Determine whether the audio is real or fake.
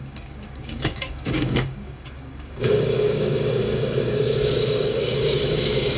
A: fake